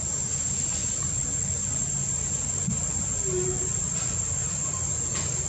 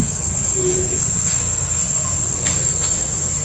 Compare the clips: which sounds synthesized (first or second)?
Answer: second